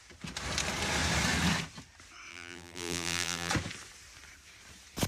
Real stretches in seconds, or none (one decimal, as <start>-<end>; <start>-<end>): 0.0-2.3; 3.5-5.1